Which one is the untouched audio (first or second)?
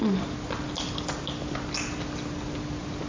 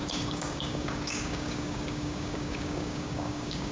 first